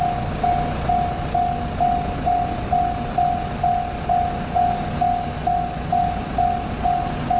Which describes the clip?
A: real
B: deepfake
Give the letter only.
A